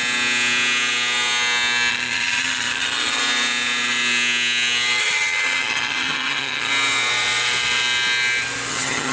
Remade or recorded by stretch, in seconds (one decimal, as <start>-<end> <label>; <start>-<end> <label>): 0.0-1.9 recorded; 1.9-3.2 remade; 3.2-5.0 recorded; 5.0-6.7 remade; 6.7-8.7 recorded; 8.7-9.1 remade